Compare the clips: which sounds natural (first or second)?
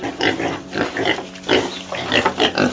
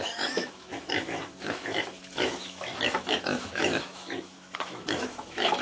first